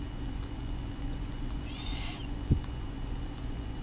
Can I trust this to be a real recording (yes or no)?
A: no